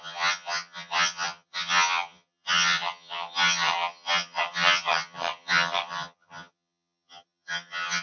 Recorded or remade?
remade